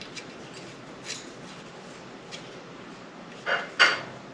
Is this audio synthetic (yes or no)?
no